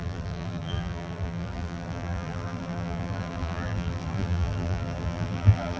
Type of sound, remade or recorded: remade